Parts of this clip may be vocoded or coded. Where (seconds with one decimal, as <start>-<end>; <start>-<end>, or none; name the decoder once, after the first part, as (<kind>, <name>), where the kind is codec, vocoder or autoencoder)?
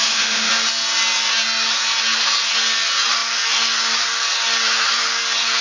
0.0-0.5 (autoencoder, DAC-VAE)